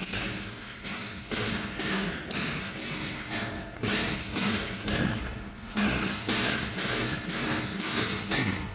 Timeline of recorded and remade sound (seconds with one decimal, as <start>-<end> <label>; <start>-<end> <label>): 0.0-2.1 remade; 2.1-2.6 recorded; 2.6-8.7 remade